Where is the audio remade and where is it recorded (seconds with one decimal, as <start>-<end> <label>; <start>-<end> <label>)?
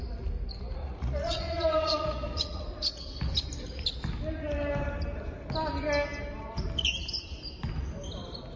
0.0-0.8 recorded; 0.8-2.6 remade; 2.6-8.6 recorded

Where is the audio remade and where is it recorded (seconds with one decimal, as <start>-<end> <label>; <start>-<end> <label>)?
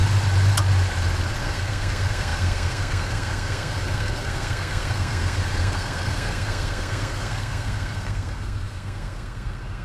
0.0-1.4 recorded; 1.4-9.8 remade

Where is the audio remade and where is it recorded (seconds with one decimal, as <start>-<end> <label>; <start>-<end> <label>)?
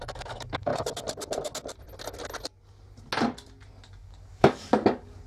0.0-0.7 remade; 0.7-3.9 recorded; 3.9-5.3 remade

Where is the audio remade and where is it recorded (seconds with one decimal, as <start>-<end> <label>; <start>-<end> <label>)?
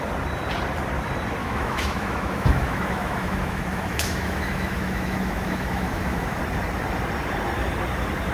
0.0-1.4 recorded; 1.4-6.4 remade; 6.4-8.3 recorded